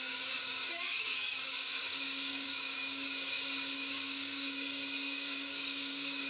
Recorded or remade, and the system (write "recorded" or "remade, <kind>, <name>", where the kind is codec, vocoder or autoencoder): remade, codec, DAC